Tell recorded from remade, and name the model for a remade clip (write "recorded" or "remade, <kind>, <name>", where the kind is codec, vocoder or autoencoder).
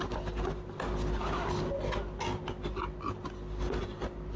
recorded